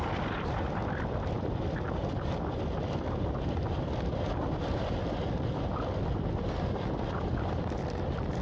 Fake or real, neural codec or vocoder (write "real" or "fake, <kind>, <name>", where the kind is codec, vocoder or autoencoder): real